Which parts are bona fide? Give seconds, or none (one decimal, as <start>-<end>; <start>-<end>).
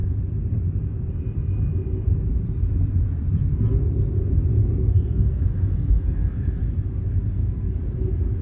0.0-4.5; 6.6-7.2; 7.8-8.4